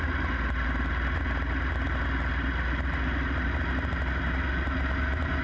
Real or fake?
real